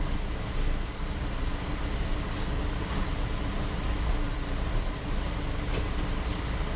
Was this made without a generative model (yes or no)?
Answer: yes